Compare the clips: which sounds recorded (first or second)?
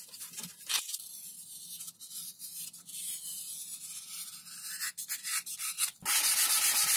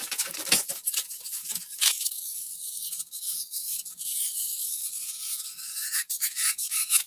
first